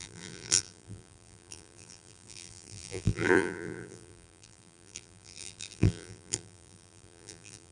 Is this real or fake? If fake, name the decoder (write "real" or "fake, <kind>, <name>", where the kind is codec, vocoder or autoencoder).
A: fake, vocoder, BigVGAN v2